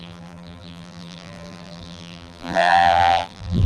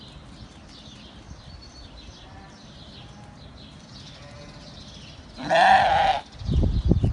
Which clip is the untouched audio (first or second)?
second